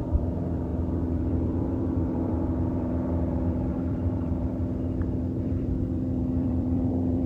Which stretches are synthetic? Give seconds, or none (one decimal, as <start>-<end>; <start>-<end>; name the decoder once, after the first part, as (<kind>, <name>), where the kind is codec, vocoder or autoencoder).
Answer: 0.0-4.6 (vocoder, BigVGAN v2); 5.2-7.3